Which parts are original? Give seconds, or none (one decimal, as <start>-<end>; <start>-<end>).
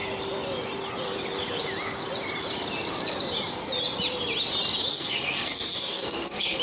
0.0-4.9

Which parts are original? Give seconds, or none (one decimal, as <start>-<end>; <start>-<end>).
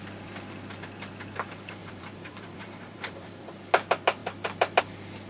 0.0-1.8; 3.5-5.3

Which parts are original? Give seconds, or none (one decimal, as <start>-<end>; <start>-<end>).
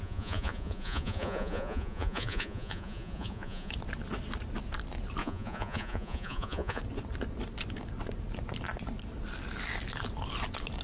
3.7-5.2; 6.8-10.8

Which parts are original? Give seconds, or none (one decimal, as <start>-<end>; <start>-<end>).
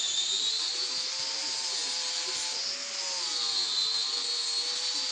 0.0-5.1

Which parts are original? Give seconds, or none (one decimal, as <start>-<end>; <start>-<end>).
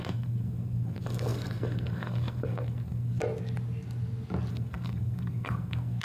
3.2-4.5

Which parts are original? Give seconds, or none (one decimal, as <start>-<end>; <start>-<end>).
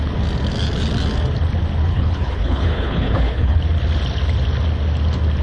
0.0-1.9; 3.6-5.4